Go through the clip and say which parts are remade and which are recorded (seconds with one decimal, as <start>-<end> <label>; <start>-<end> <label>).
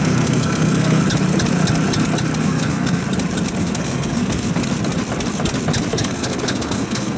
0.0-1.0 remade; 1.0-2.4 recorded; 2.4-3.0 remade; 3.0-3.6 recorded; 3.6-4.6 remade; 4.6-5.9 recorded; 5.9-7.2 remade